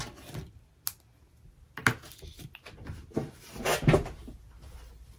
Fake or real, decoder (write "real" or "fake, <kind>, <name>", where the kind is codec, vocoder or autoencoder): real